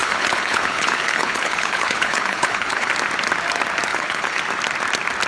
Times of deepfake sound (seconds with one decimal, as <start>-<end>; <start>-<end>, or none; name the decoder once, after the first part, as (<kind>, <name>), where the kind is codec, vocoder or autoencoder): 0.0-2.9 (codec, HILCodec); 3.9-4.4